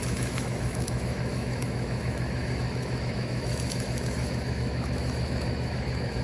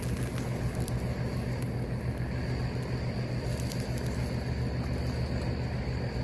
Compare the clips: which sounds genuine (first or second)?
second